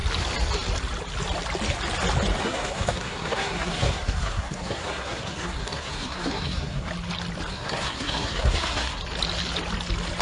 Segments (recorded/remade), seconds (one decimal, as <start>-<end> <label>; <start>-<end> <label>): 0.0-2.4 recorded; 2.4-6.9 remade; 6.9-7.5 recorded; 7.5-9.0 remade; 9.0-10.2 recorded